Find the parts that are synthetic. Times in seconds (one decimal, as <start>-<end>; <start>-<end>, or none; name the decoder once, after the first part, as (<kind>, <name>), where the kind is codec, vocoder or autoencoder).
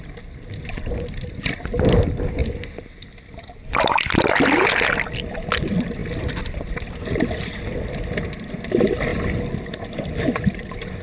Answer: none